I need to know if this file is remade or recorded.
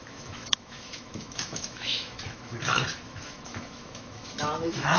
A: remade